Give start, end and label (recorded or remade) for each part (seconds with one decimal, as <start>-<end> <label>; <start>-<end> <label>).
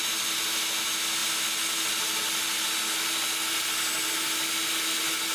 0.0-5.3 recorded